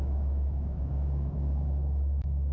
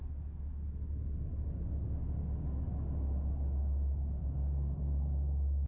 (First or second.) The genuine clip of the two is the second